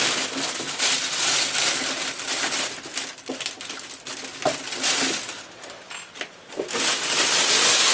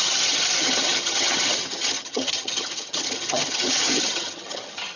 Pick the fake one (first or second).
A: second